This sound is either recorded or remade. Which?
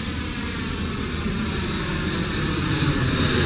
recorded